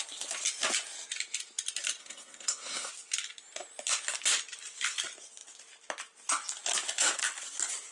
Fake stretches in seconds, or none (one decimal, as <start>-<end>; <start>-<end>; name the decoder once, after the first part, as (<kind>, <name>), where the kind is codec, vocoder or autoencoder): 2.0-2.9 (codec, SNAC)